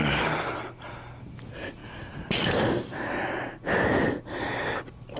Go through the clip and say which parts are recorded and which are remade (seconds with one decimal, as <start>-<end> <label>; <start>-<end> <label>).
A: 0.0-5.2 recorded